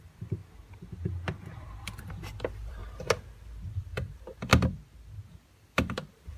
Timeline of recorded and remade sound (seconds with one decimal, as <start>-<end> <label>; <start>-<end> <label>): 0.0-0.4 remade; 0.4-1.6 recorded; 1.6-2.8 remade; 2.8-3.8 recorded; 3.8-4.5 remade; 4.5-5.5 recorded; 5.5-6.4 remade